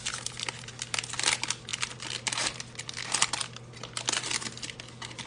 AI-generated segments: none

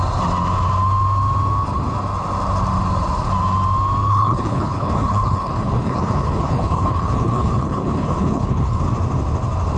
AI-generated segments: 4.1-8.8 (codec, HILCodec)

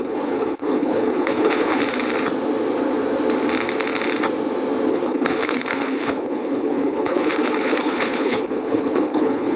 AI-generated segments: 0.0-1.8 (codec, HILCodec); 4.9-9.6

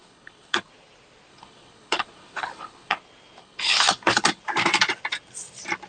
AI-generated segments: 0.0-0.7 (codec, HILCodec); 1.3-3.0; 3.4-4.4

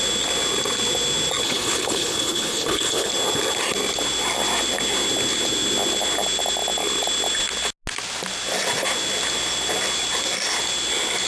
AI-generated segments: 1.4-3.1 (codec, HILCodec)

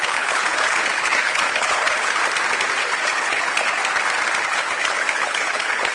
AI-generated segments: 0.0-2.2 (codec, HILCodec); 2.8-3.8; 4.4-5.9

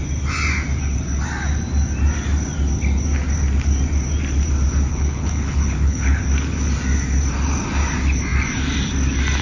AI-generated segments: 4.9-6.2 (codec, HILCodec)

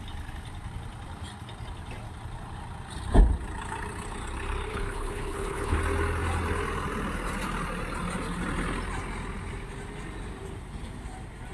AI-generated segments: 4.7-5.8 (codec, HILCodec)